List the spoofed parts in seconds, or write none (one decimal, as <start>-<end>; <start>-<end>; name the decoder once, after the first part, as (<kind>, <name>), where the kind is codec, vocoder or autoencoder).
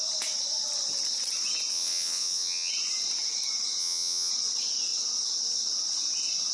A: 1.7-2.7 (vocoder, WaveNeXt); 3.8-4.3